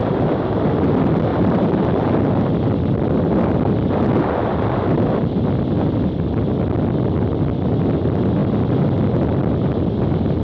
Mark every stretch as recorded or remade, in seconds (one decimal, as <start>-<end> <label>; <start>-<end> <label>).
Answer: 0.0-0.6 remade; 0.6-1.3 recorded; 1.3-2.2 remade; 2.2-10.4 recorded